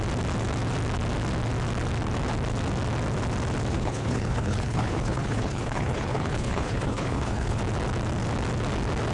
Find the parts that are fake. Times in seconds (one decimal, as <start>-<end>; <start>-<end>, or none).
3.7-7.6